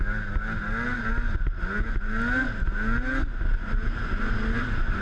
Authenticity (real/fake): real